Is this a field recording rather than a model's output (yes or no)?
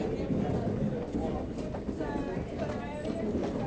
yes